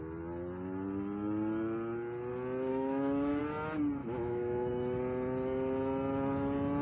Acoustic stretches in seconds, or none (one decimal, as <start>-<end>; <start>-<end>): 0.0-2.7; 3.4-4.0; 5.0-6.8